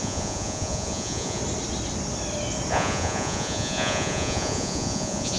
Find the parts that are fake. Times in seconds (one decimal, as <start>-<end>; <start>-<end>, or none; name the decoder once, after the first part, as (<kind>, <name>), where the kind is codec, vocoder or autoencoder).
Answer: 0.0-1.4 (vocoder, Vocos); 2.7-5.4

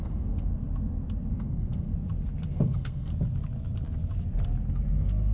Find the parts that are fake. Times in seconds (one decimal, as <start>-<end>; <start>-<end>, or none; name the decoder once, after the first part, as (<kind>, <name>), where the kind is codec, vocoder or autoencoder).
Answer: 0.0-0.5 (codec, SNAC); 1.3-1.9; 2.5-3.1; 4.7-5.3

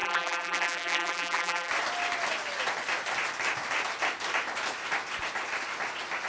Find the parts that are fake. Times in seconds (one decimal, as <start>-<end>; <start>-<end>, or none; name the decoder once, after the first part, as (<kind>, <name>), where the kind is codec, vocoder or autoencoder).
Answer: 0.0-1.7 (vocoder, BigVGAN v2)

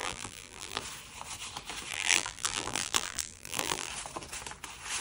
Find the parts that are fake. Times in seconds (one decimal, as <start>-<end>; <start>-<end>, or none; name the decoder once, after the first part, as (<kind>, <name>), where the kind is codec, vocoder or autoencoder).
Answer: 0.0-0.8 (vocoder, BigVGAN v2); 1.9-3.9

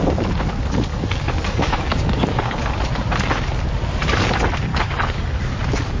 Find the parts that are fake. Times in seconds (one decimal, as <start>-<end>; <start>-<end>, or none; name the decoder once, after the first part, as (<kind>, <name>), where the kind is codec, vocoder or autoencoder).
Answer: 0.9-2.7 (codec, DAC); 4.7-5.4